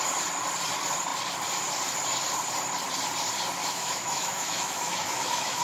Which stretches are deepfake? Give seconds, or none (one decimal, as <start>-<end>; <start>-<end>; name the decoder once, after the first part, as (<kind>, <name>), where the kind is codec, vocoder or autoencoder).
3.6-5.6 (autoencoder, DAC-VAE)